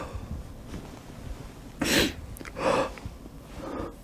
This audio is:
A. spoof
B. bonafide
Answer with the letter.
B